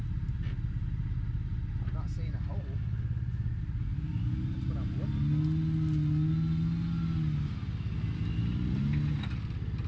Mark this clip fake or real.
real